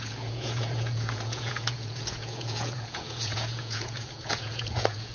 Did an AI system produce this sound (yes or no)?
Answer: yes